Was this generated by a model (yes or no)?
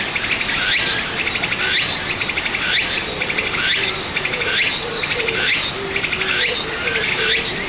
no